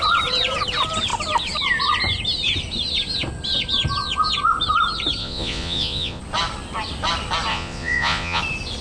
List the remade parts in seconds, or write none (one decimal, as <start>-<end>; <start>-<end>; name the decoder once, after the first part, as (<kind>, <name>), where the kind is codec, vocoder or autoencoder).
5.2-6.2 (vocoder, Vocos); 7.5-8.4